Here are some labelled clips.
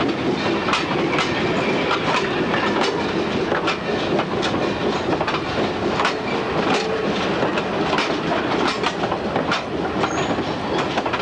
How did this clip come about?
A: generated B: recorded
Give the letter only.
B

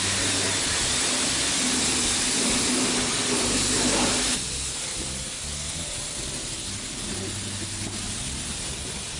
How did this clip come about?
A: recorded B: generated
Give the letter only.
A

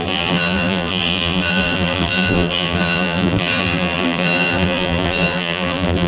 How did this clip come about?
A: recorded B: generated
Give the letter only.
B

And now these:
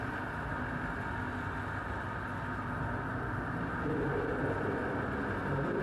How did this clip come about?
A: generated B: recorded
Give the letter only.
B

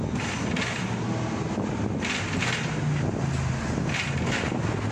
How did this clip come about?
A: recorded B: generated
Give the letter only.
A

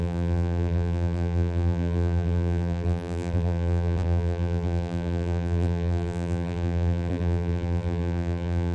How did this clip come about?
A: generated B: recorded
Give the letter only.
A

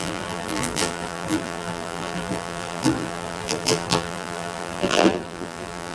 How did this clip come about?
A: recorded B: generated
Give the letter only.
B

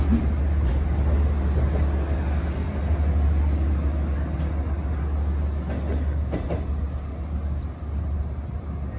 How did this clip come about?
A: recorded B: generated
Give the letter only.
A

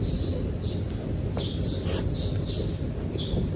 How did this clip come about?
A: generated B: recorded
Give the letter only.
B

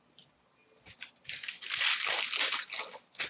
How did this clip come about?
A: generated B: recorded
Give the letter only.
B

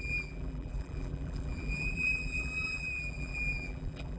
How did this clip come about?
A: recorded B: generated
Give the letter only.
B